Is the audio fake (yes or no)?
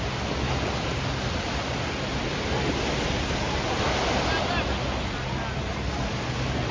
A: no